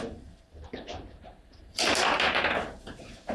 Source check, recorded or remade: remade